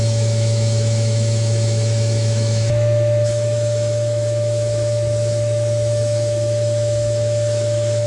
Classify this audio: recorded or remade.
remade